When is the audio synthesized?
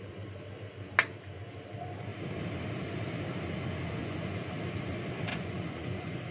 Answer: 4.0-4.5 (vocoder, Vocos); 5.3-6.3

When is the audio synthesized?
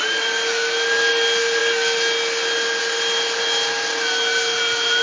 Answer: none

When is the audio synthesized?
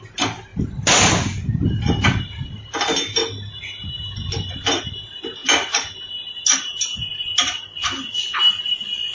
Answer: none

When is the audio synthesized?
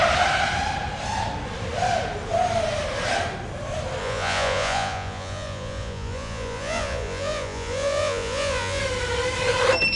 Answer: 4.0-8.8 (vocoder, Vocos)